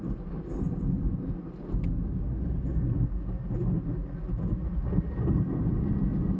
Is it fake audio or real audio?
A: real